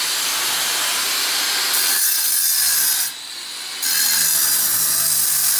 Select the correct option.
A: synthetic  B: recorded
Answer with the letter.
B